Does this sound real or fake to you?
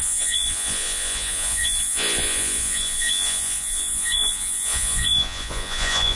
fake